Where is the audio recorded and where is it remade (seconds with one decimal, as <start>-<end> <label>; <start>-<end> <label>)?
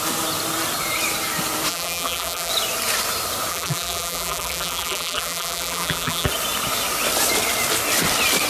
0.0-1.7 recorded; 1.7-2.5 remade; 2.5-3.5 recorded; 3.5-6.3 remade; 6.3-8.5 recorded